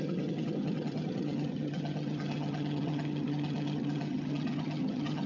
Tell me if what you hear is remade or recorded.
remade